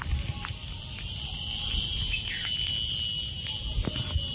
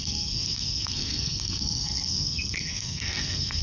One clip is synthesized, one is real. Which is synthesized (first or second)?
second